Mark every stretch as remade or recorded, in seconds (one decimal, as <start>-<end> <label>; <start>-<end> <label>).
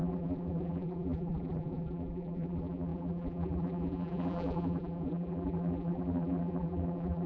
0.0-7.3 remade